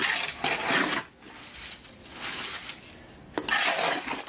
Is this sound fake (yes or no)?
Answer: no